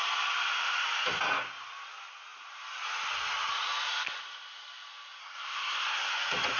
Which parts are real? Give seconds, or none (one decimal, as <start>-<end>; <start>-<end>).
0.0-5.2; 6.1-6.6